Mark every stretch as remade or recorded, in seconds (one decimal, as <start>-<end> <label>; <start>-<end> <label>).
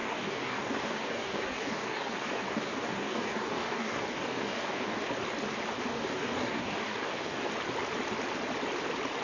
0.0-5.0 remade; 5.0-5.9 recorded; 5.9-7.5 remade; 7.5-9.2 recorded